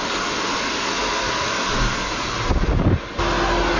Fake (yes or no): no